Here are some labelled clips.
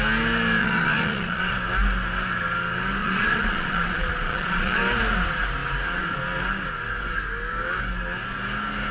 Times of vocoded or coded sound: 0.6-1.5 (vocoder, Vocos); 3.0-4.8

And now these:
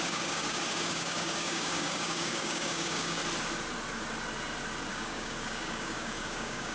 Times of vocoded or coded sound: 0.0-3.2 (codec, DAC); 4.9-6.7